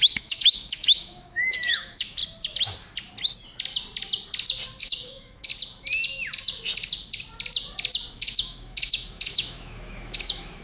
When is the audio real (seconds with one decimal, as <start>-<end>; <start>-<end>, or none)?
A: 2.2-4.8; 5.5-8.1

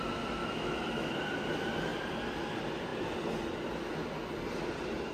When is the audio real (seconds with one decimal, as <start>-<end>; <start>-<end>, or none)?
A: 0.0-0.4; 1.1-5.1

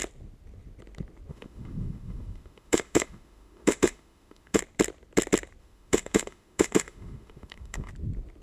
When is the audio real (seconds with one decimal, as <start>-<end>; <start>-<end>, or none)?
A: 0.0-1.3; 4.6-5.6; 7.9-8.4

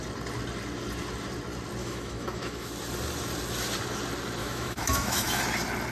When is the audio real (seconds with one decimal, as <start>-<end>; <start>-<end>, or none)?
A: 0.0-1.8; 2.7-4.4; 5.4-5.9

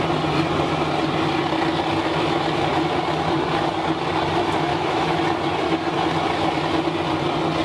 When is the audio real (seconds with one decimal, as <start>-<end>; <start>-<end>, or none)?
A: 0.0-4.7; 5.2-7.6

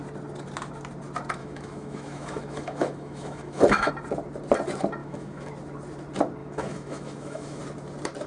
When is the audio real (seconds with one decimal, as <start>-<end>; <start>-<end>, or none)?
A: 0.0-1.4; 3.9-5.0; 5.5-6.4; 7.6-8.3

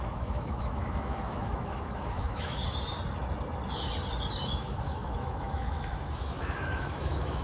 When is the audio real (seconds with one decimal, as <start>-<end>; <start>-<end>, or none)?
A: 2.6-4.5

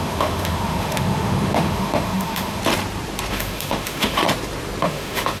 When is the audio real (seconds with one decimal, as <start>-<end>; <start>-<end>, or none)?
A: 2.6-3.3; 4.2-4.8